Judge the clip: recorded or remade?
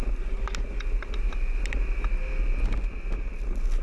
recorded